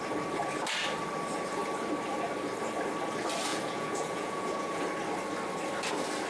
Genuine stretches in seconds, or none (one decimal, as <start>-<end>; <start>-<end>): 0.0-3.5; 4.8-6.3